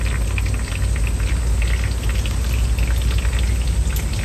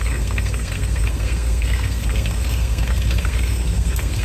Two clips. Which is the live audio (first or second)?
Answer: first